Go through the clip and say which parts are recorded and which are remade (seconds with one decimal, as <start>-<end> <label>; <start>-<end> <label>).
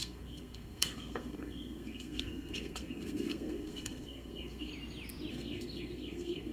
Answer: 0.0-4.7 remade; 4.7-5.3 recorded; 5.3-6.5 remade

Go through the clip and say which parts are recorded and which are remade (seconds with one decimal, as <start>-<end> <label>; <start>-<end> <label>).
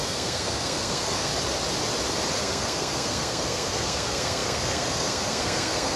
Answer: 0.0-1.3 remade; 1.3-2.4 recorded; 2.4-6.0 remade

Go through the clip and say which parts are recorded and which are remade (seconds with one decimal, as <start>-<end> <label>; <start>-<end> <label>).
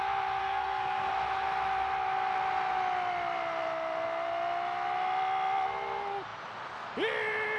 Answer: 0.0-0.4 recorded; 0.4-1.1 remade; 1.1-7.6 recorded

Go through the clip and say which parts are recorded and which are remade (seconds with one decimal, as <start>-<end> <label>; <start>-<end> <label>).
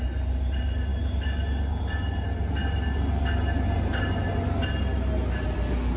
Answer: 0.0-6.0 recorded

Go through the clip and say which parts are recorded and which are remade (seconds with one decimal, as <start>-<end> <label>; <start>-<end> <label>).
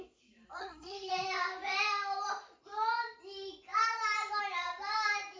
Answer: 0.0-0.6 recorded; 0.6-1.1 remade; 1.1-5.4 recorded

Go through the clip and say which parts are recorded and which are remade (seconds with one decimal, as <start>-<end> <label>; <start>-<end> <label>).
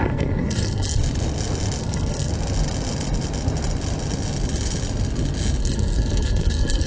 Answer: 0.0-1.0 remade; 1.0-1.8 recorded; 1.8-2.3 remade; 2.3-5.6 recorded; 5.6-6.9 remade